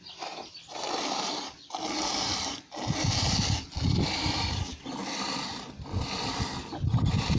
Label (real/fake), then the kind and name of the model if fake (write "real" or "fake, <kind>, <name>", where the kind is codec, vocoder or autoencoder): real